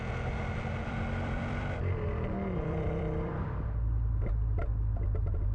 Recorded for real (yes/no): no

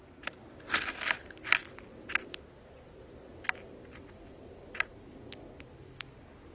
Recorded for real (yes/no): no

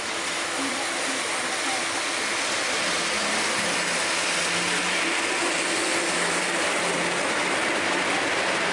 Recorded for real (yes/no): yes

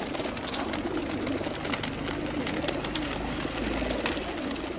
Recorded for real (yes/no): yes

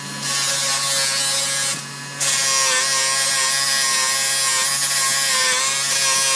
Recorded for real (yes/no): yes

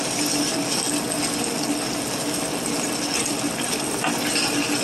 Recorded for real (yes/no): yes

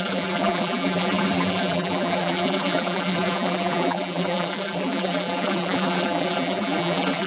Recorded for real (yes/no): no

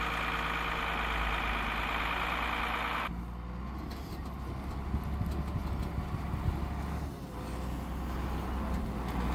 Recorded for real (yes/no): yes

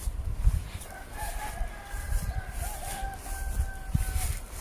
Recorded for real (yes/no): yes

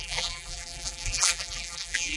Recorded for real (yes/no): no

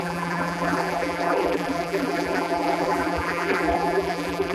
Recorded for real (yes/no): no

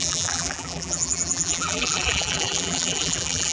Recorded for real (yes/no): no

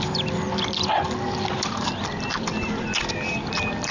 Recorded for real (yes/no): no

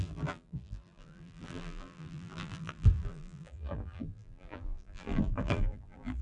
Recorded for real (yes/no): no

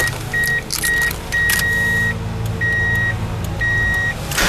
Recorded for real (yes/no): yes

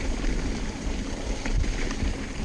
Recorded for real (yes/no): yes